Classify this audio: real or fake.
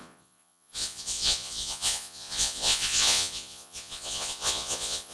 fake